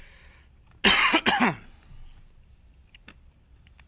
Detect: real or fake real